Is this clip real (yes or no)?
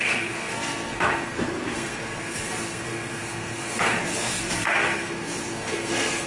no